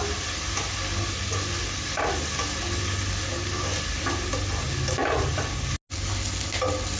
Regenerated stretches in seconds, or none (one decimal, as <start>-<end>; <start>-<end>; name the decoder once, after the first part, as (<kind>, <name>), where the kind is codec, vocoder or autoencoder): none